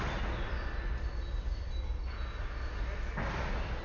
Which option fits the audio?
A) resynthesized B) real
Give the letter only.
B